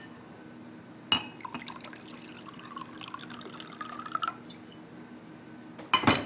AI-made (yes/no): no